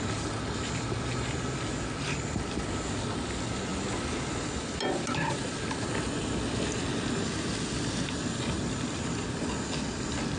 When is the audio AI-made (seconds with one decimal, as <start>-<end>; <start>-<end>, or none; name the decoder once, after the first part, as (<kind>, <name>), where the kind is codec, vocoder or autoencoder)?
none